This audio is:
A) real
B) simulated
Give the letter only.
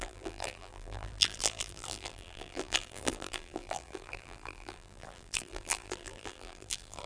B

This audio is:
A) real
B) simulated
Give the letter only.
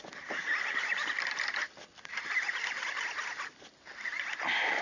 A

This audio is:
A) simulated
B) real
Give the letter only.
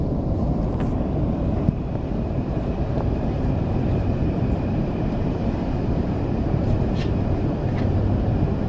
A